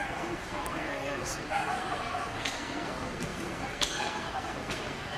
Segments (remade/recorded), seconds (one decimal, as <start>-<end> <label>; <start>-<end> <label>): 0.0-5.2 remade